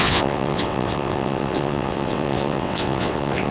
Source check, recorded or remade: remade